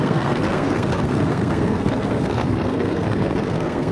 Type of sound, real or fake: fake